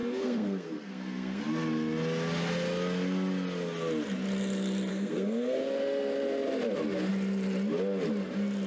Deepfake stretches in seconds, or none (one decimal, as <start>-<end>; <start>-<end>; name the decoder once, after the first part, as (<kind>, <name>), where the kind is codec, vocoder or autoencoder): 0.0-1.4 (codec, SNAC); 4.9-5.6